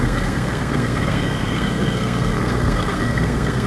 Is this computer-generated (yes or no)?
yes